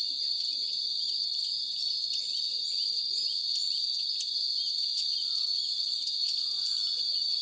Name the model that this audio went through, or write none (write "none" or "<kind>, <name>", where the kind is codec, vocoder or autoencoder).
vocoder, BigVGAN v2